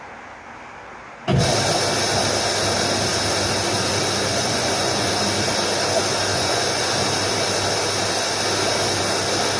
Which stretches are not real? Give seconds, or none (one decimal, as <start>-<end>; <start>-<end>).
4.3-5.1; 6.3-6.9